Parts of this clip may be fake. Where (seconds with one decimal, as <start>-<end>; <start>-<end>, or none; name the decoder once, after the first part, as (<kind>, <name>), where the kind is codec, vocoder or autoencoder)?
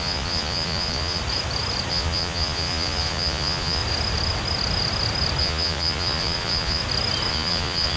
0.0-1.2 (vocoder, Vocos); 1.9-3.8; 5.4-6.8; 7.3-8.0